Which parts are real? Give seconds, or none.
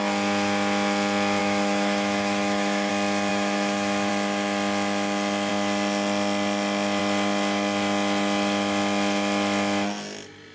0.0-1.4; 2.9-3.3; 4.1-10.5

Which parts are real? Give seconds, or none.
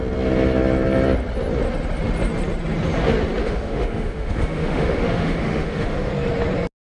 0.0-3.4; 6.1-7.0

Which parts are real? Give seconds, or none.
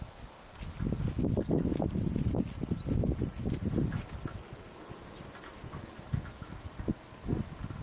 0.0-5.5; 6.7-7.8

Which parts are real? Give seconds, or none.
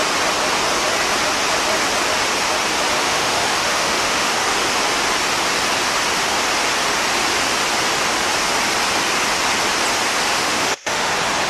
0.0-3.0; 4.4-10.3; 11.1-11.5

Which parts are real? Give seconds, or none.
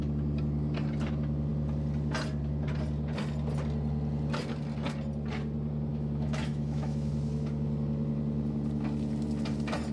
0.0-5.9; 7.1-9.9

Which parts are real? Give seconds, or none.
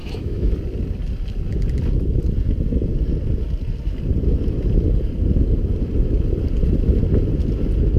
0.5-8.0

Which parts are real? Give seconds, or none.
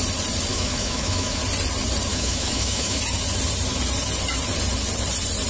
0.0-0.5; 1.4-2.1; 3.0-5.5